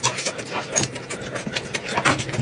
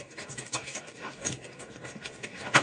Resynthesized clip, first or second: second